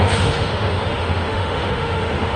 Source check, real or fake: fake